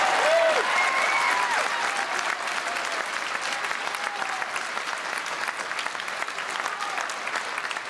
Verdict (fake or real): real